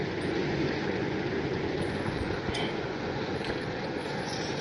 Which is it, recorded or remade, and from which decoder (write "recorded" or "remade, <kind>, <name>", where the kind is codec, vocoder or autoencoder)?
remade, vocoder, Vocos